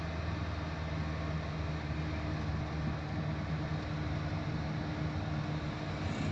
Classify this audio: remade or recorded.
recorded